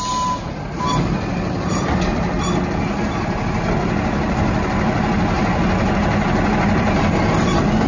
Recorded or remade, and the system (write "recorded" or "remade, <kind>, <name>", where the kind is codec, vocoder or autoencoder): recorded